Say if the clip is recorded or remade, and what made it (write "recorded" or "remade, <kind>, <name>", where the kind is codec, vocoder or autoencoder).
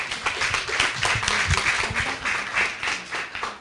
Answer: recorded